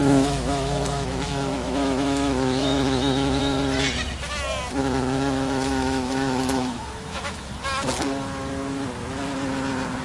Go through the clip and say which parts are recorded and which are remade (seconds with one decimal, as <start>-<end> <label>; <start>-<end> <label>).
0.0-3.4 remade; 3.4-4.8 recorded; 4.8-7.5 remade; 7.5-10.0 recorded